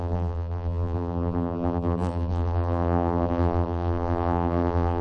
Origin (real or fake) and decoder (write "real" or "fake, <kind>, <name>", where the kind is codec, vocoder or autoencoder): fake, vocoder, BigVGAN v2